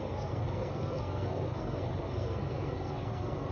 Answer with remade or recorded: remade